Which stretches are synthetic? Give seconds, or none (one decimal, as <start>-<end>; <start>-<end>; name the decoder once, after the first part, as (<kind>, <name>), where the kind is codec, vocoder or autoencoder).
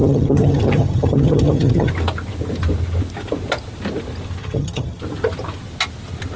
0.0-1.9 (vocoder, HiFi-GAN); 4.4-5.0